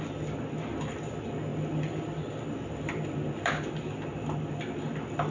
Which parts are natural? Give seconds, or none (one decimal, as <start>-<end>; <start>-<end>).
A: 0.0-5.3